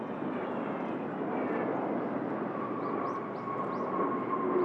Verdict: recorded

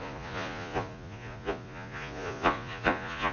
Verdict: remade